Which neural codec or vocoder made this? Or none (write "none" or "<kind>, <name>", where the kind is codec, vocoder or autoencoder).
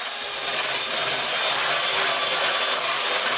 none